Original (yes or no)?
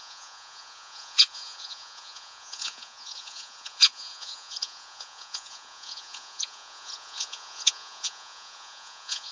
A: no